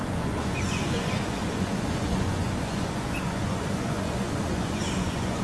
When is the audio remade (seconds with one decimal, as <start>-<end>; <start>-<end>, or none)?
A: 0.0-5.4